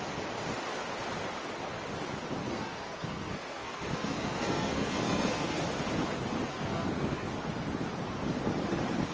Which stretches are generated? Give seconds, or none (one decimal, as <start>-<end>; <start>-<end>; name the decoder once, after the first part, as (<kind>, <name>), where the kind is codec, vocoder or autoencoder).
2.4-5.6 (codec, SNAC); 6.5-7.3